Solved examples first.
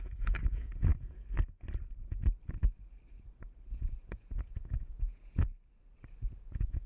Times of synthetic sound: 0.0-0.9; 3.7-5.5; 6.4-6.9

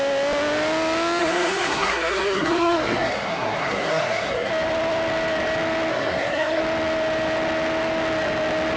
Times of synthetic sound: 1.2-4.5; 5.9-6.6

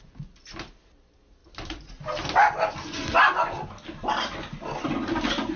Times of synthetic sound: none

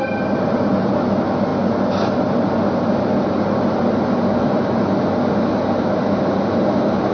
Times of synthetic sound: none

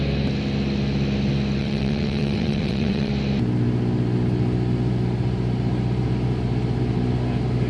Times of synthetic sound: 1.6-3.1

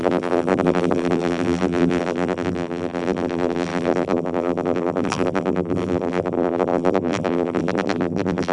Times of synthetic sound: 0.0-8.5